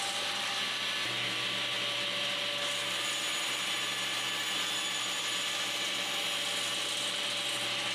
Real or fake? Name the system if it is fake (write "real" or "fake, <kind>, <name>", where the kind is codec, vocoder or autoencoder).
real